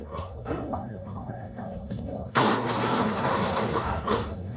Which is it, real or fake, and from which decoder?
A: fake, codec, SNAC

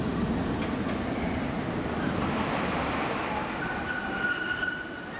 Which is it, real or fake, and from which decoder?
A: real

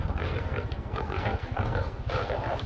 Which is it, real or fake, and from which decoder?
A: fake, codec, SNAC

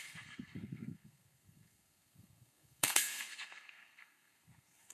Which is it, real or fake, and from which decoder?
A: fake, codec, SNAC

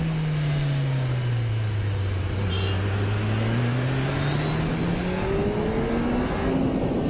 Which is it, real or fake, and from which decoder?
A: real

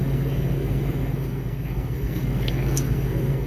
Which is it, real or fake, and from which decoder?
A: fake, codec, SNAC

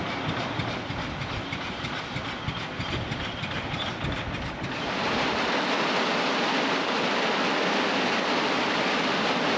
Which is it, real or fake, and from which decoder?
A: real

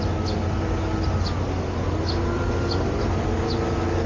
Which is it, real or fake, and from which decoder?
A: real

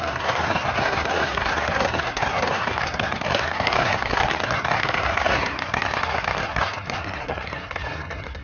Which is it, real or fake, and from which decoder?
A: fake, codec, SNAC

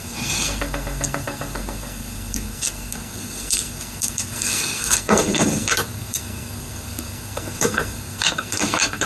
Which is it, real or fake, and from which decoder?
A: fake, codec, SNAC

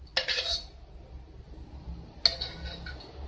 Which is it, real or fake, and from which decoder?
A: real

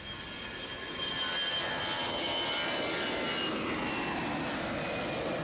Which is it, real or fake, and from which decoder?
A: real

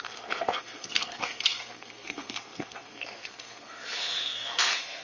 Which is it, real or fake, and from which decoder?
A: fake, codec, SNAC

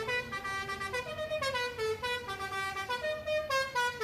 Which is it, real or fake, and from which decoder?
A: real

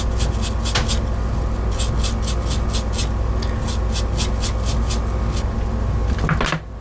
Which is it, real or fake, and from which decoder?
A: real